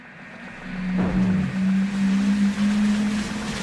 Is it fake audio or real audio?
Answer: real